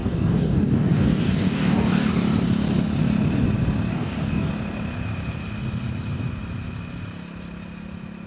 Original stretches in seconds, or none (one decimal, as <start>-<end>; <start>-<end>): 2.1-3.9; 4.5-8.3